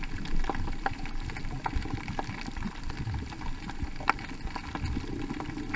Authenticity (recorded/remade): recorded